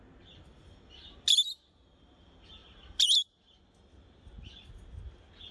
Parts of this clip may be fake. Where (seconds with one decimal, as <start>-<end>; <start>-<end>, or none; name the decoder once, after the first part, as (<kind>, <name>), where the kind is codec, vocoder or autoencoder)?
none

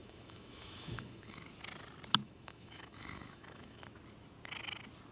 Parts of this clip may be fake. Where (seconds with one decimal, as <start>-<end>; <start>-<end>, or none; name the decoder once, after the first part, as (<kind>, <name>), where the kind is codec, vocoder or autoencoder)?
0.0-1.5 (autoencoder, DAC-VAE); 2.2-3.8